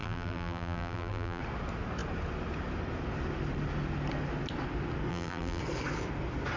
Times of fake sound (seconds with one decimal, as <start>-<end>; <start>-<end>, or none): 0.0-1.4; 5.1-5.6